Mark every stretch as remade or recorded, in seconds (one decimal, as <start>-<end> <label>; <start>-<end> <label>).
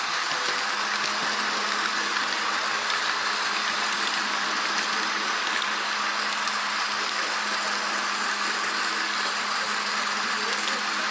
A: 0.0-1.2 recorded; 1.2-1.9 remade; 1.9-11.1 recorded